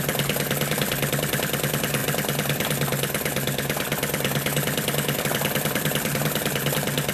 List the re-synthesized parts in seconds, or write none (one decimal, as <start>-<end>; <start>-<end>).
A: none